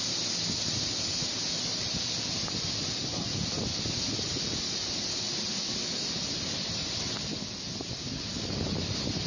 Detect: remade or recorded recorded